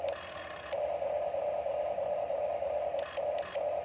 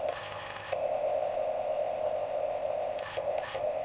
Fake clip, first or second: second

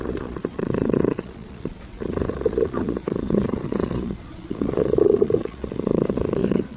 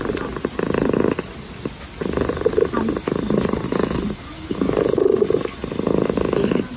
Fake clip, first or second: first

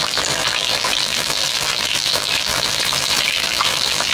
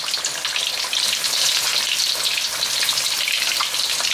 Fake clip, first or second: first